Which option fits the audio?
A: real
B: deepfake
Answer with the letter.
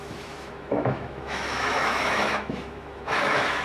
B